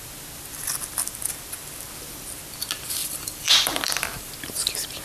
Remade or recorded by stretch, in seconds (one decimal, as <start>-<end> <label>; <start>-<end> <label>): 0.0-3.0 recorded; 3.0-4.3 remade; 4.3-5.0 recorded